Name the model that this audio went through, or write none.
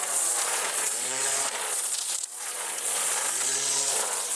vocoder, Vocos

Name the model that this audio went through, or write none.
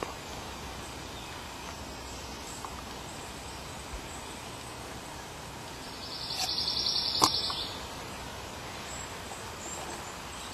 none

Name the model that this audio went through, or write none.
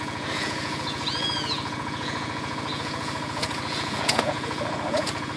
vocoder, Vocos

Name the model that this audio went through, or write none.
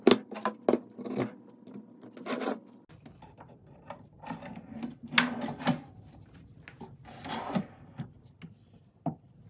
none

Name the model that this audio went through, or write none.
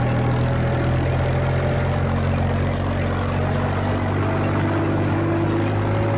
none